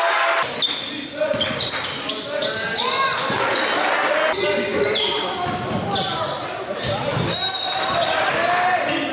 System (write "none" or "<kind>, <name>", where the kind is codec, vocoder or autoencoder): none